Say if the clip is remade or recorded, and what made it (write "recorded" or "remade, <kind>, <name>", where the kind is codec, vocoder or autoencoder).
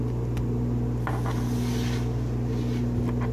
recorded